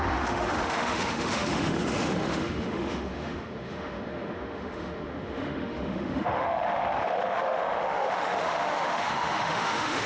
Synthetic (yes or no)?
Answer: yes